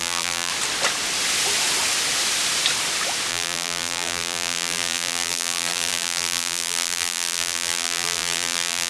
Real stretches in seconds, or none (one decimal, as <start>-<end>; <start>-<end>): 0.5-3.3

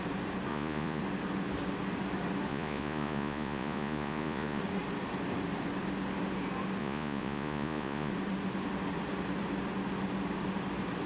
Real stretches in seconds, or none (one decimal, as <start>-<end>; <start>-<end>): 0.0-0.5; 1.0-2.5; 4.6-6.8; 8.1-11.1